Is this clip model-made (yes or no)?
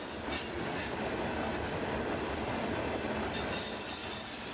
no